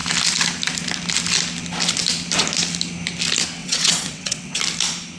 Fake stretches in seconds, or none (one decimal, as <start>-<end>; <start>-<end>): 3.6-4.6

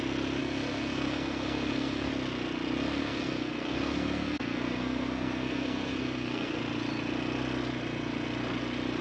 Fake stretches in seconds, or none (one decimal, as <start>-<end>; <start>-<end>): 0.4-2.1; 3.0-6.6

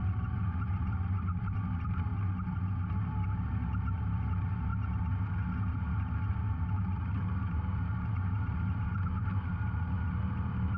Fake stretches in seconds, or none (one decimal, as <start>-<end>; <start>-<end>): 0.0-2.1; 2.9-4.7; 6.3-10.8

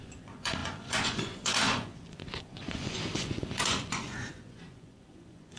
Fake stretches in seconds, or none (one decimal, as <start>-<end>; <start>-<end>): 0.0-5.6